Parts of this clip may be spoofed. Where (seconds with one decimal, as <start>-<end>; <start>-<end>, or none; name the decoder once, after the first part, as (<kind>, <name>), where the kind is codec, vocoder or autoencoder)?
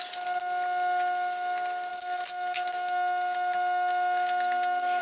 1.9-5.0 (autoencoder, DAC-VAE)